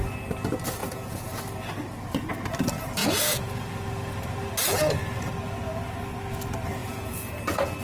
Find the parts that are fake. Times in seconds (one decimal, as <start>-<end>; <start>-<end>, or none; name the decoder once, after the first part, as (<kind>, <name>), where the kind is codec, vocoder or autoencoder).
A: 0.8-1.4 (vocoder, Vocos); 3.0-3.7; 6.8-7.3

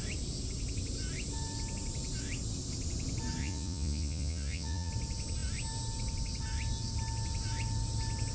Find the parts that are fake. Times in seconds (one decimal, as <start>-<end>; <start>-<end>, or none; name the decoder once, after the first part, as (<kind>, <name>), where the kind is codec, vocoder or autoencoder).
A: 3.4-4.9 (vocoder, Vocos)

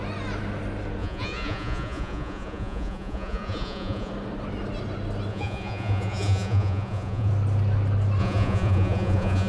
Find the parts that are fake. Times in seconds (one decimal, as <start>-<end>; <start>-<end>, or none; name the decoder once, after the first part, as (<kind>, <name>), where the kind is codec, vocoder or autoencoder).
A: 1.0-4.1 (vocoder, Vocos); 5.3-7.3; 8.2-9.5

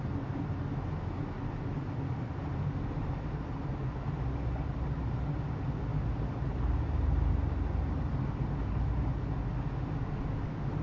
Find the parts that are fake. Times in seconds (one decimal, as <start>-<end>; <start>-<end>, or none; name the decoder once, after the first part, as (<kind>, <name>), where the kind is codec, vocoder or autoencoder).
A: none